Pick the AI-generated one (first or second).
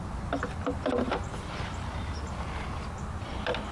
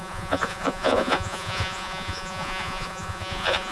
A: second